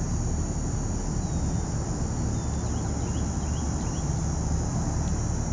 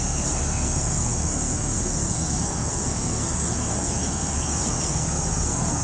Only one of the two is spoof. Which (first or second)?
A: second